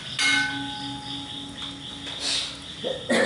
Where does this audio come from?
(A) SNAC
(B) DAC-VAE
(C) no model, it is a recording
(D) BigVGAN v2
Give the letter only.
C